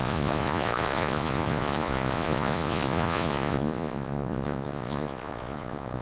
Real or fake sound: fake